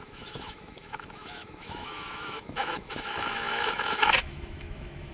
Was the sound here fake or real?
fake